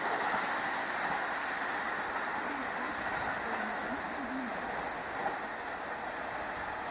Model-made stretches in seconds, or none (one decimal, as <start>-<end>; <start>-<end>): none